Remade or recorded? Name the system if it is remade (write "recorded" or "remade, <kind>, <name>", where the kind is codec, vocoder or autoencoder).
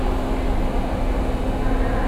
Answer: recorded